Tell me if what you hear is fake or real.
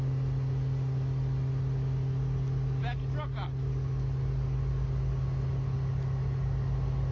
real